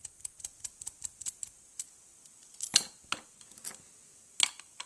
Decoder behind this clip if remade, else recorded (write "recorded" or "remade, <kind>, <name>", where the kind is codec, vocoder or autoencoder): recorded